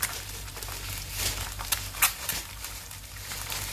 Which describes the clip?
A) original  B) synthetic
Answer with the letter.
B